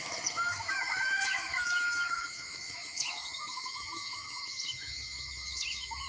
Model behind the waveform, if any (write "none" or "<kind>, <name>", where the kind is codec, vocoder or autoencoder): autoencoder, DAC-VAE